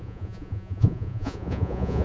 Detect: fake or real fake